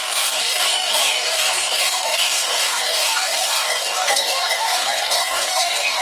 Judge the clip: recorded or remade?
remade